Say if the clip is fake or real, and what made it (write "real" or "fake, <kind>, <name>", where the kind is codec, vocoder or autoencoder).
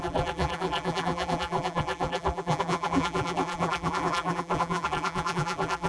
fake, vocoder, BigVGAN v2